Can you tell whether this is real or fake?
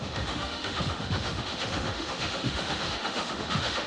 fake